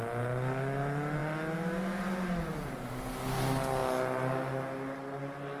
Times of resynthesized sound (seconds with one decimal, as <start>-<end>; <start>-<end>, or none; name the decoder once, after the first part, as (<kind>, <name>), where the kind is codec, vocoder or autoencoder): none